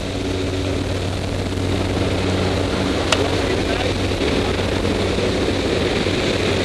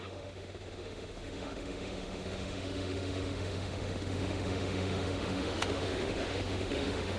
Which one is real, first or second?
first